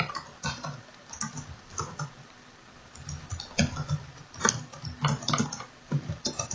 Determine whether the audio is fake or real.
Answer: real